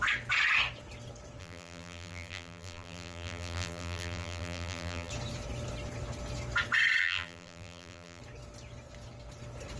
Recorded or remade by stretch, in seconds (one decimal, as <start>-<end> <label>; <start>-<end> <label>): 0.0-1.4 recorded; 1.4-5.1 remade; 5.1-7.0 recorded; 7.0-8.2 remade; 8.2-9.8 recorded